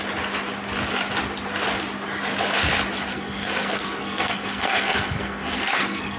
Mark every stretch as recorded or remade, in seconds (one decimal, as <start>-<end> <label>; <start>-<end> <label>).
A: 0.0-3.1 recorded; 3.1-6.2 remade